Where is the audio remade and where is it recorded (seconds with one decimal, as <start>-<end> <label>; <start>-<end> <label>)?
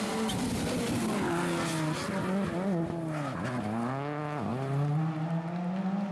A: 0.0-6.1 recorded